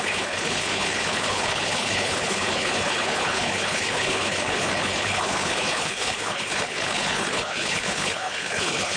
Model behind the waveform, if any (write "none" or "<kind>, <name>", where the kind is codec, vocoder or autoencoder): codec, HILCodec